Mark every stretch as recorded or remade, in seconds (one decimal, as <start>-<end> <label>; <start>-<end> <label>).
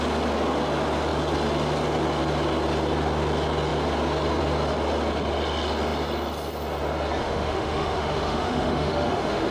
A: 0.0-7.2 recorded; 7.2-9.5 remade